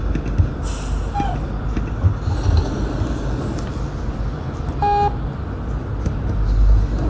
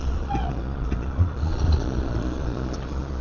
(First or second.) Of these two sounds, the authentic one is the first